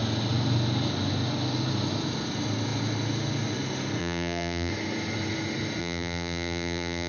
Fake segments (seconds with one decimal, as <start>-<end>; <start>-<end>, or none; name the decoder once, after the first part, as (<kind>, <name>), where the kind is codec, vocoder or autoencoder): 4.0-4.7 (vocoder, BigVGAN v2); 5.8-7.1